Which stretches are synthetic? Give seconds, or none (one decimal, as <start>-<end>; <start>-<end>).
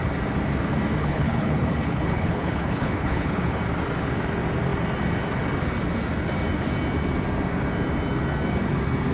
1.0-3.6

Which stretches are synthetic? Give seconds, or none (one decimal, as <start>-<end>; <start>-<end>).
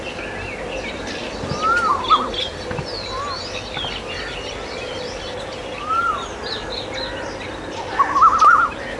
5.5-6.1